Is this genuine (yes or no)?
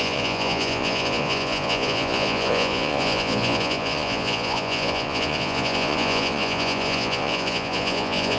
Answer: no